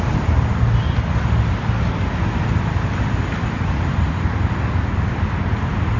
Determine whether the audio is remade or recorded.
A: recorded